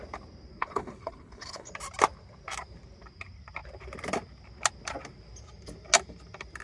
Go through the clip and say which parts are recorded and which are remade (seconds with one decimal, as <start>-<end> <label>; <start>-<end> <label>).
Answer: 0.0-0.6 recorded; 0.6-1.7 remade; 1.7-6.6 recorded

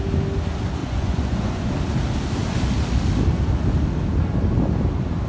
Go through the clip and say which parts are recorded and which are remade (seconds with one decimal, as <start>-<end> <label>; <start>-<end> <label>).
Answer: 0.0-0.8 recorded; 0.8-1.7 remade; 1.7-5.3 recorded

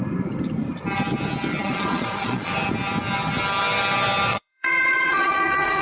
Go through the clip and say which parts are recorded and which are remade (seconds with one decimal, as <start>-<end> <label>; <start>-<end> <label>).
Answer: 0.0-1.5 recorded; 1.5-2.5 remade; 2.5-4.3 recorded; 4.3-5.8 remade

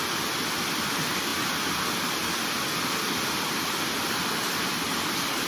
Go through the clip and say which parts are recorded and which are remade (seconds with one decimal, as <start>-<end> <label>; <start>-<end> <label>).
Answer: 0.0-5.5 recorded

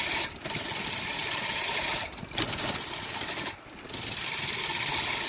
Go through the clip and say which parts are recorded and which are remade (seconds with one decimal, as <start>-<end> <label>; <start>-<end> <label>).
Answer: 0.0-5.3 recorded

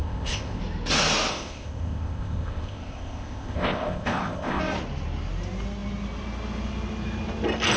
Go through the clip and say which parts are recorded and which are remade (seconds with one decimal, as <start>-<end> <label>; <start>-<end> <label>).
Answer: 0.0-0.6 remade; 0.6-1.3 recorded; 1.3-4.6 remade; 4.6-7.8 recorded